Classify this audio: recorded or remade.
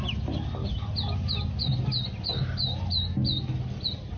recorded